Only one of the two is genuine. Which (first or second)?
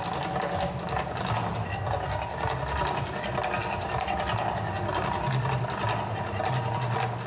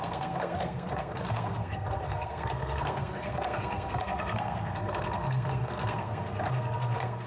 first